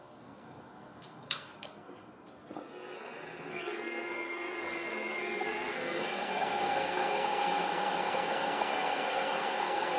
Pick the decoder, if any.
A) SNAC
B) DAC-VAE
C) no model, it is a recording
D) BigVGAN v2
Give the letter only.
A